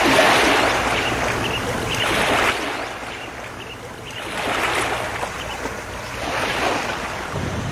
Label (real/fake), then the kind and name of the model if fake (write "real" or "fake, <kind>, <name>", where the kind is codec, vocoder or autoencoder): real